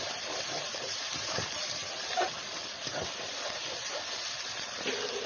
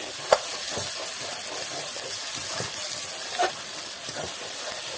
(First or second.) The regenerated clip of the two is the first